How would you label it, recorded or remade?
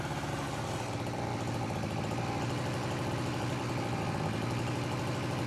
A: recorded